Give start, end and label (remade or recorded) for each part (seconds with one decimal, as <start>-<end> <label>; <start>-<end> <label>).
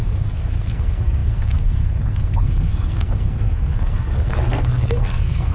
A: 0.0-5.5 remade